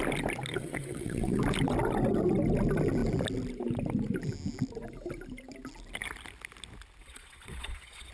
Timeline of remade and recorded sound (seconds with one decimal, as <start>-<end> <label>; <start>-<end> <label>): 0.0-0.5 recorded; 0.5-1.4 remade; 1.4-7.0 recorded; 7.0-8.1 remade

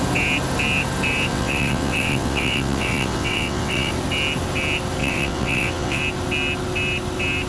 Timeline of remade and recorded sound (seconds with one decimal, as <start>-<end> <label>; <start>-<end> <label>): 0.0-1.3 recorded; 1.3-3.9 remade; 3.9-5.0 recorded; 5.0-6.0 remade; 6.0-7.5 recorded

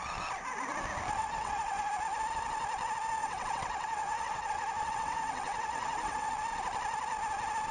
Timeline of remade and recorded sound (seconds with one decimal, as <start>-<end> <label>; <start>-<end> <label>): 0.0-1.2 recorded; 1.2-1.9 remade; 1.9-3.2 recorded; 3.2-6.3 remade; 6.3-7.7 recorded

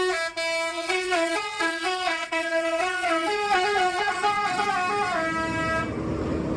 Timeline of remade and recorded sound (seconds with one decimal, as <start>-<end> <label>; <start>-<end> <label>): 0.0-0.7 recorded; 0.7-4.7 remade; 4.7-6.6 recorded

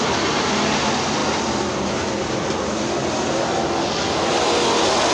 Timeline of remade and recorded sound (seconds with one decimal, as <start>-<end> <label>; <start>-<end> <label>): 0.0-5.1 recorded

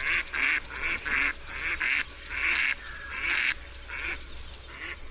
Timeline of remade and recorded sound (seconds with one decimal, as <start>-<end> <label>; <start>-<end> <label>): 0.0-5.1 recorded

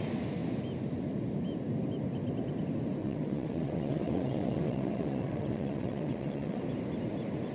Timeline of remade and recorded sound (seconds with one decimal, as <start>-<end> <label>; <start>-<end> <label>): 0.0-3.0 recorded; 3.0-6.6 remade; 6.6-7.5 recorded

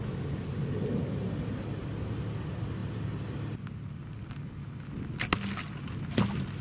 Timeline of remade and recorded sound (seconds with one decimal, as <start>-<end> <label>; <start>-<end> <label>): 0.0-6.6 recorded